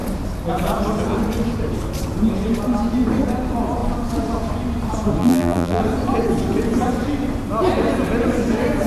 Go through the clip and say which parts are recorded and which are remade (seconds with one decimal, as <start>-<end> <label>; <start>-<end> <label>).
0.0-5.2 recorded; 5.2-5.8 remade; 5.8-8.9 recorded